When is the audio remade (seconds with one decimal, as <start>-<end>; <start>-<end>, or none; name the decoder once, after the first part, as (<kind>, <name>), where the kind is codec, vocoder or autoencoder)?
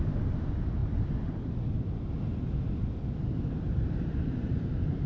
0.8-1.4 (vocoder, BigVGAN v2); 2.3-4.2